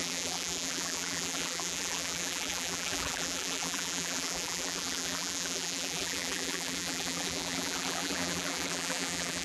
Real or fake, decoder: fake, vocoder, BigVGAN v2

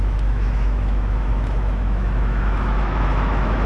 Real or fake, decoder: fake, autoencoder, DAC-VAE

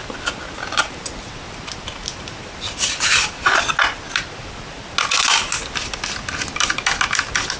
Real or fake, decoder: real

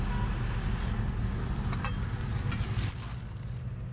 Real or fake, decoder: real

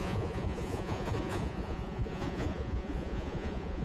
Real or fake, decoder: fake, vocoder, Vocos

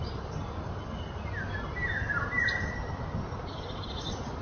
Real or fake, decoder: real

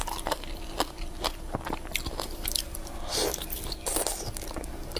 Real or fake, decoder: fake, vocoder, BigVGAN v2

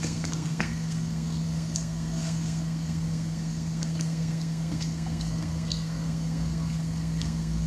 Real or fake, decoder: fake, codec, SNAC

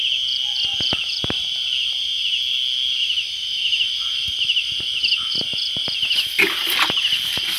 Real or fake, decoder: real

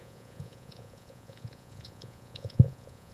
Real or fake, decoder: fake, vocoder, Vocos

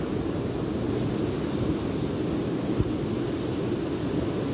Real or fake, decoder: real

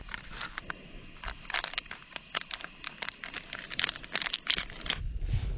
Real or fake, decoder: real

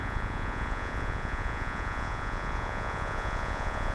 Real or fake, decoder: fake, vocoder, Vocos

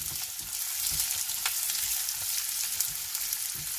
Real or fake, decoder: real